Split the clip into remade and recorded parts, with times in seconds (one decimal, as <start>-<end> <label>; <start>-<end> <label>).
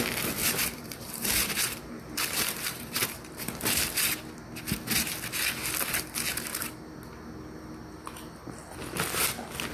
0.0-0.4 recorded; 0.4-3.7 remade; 3.7-9.7 recorded